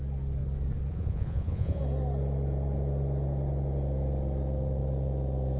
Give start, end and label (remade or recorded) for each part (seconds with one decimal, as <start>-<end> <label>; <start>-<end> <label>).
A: 0.0-0.9 recorded; 0.9-1.8 remade; 1.8-5.6 recorded